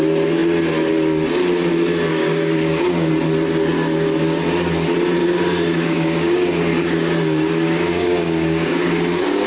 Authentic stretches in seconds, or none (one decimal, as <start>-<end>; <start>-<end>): 0.0-2.1; 3.1-5.2; 8.9-9.5